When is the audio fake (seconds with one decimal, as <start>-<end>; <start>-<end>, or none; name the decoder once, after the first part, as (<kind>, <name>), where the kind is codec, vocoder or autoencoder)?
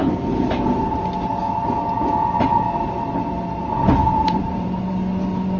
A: 4.0-4.9 (vocoder, BigVGAN v2)